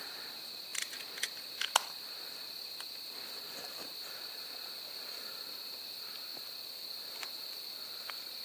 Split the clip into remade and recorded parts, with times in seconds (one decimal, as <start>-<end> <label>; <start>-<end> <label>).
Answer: 0.0-8.4 recorded

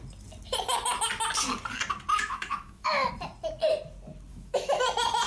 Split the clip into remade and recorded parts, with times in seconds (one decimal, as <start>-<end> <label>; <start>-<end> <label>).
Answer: 0.0-2.1 recorded; 2.1-3.1 remade; 3.1-4.3 recorded; 4.3-4.8 remade; 4.8-5.3 recorded

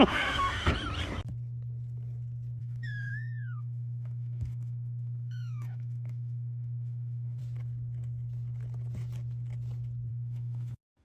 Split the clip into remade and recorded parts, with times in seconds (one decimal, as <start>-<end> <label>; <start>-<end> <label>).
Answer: 0.0-0.7 remade; 0.7-2.6 recorded; 2.6-7.4 remade; 7.4-10.1 recorded; 10.1-11.0 remade

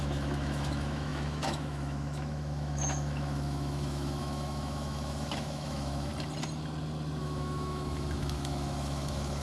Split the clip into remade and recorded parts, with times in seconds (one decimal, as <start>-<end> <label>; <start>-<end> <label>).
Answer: 0.0-6.1 remade; 6.1-7.2 recorded; 7.2-9.4 remade

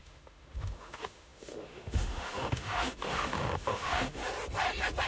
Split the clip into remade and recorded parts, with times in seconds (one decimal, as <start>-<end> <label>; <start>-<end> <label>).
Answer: 0.0-4.2 remade; 4.2-5.1 recorded

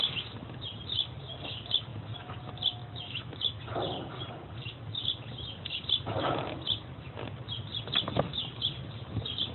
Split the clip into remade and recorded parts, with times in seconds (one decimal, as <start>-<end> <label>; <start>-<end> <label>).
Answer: 0.0-2.8 recorded; 2.8-3.6 remade; 3.6-9.5 recorded

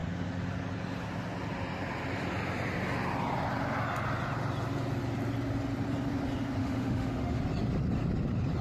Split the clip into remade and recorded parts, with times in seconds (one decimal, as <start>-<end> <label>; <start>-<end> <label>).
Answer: 0.0-6.6 recorded; 6.6-7.4 remade; 7.4-8.6 recorded